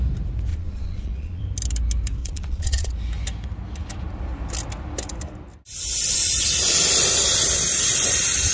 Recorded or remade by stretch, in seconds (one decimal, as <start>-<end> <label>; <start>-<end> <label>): 0.0-0.5 recorded; 0.5-1.4 remade; 1.4-2.2 recorded; 2.2-2.9 remade; 2.9-8.5 recorded